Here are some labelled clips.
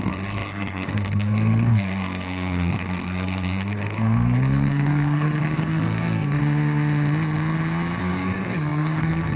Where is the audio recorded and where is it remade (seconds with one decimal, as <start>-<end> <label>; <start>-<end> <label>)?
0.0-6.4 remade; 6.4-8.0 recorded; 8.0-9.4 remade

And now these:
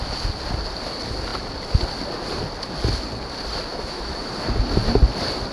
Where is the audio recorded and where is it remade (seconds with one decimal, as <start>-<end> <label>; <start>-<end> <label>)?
0.0-3.7 recorded; 3.7-4.3 remade; 4.3-5.5 recorded

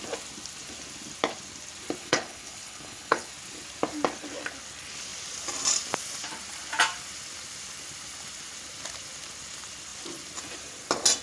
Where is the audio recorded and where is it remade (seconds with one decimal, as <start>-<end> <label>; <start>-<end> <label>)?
0.0-2.0 recorded; 2.0-3.3 remade; 3.3-11.2 recorded

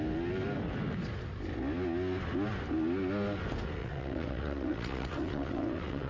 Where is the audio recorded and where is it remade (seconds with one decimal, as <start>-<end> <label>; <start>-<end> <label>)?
0.0-3.8 recorded; 3.8-6.1 remade

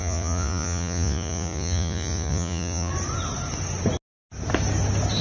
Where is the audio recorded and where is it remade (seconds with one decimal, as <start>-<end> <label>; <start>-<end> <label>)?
0.0-2.9 remade; 2.9-5.2 recorded

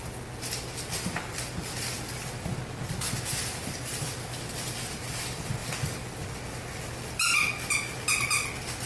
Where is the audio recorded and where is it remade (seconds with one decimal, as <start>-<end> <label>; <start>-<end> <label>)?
0.0-8.9 recorded

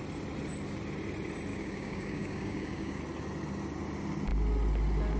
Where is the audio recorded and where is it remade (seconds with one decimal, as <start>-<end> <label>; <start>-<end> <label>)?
0.0-1.5 recorded; 1.5-3.0 remade; 3.0-5.2 recorded

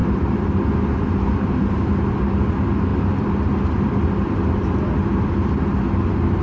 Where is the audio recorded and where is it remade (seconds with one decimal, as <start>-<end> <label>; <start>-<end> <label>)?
0.0-6.4 recorded